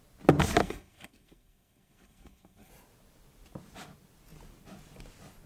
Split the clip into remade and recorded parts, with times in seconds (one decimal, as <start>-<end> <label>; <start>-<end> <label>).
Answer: 0.0-0.6 recorded; 0.6-2.7 remade; 2.7-5.5 recorded